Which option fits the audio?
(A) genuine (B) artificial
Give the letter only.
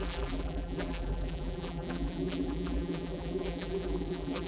B